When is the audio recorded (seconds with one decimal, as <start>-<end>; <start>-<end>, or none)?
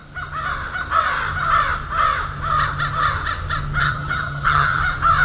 0.0-3.8; 4.8-5.2